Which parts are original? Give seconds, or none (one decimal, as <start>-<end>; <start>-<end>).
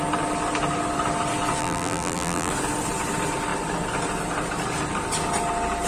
0.0-1.6; 2.5-5.9